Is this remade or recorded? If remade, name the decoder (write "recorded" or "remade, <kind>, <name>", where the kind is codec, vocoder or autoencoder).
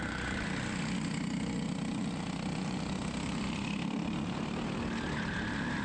recorded